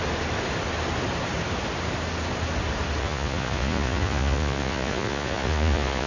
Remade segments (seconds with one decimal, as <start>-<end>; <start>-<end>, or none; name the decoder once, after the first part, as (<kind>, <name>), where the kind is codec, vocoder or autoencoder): 3.0-6.1 (vocoder, Vocos)